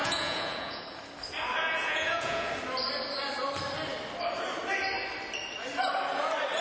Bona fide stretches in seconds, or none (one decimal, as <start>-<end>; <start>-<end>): 0.8-1.6; 2.5-6.6

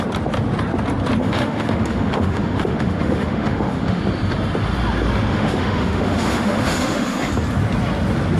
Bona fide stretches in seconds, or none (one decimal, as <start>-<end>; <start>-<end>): 0.0-1.2; 4.0-5.3; 7.3-8.4

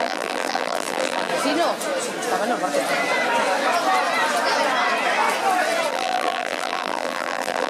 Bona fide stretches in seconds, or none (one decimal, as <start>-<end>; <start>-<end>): 1.3-5.9

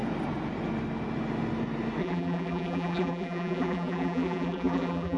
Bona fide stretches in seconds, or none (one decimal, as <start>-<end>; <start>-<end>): 0.0-2.0